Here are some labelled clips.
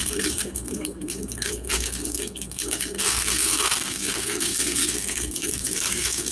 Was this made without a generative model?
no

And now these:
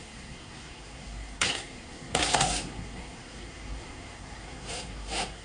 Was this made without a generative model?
no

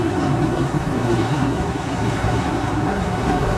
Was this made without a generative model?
no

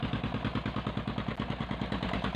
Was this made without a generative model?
yes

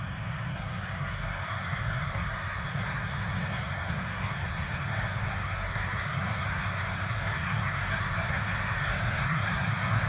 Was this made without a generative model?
no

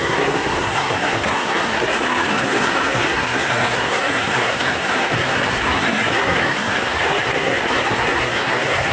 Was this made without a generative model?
no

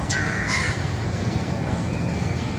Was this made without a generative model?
no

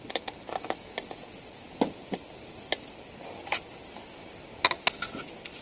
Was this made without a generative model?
yes